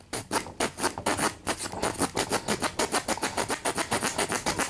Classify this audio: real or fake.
real